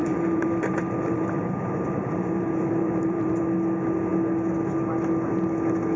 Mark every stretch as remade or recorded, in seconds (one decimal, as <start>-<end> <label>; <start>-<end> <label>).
0.0-3.4 remade; 3.4-6.0 recorded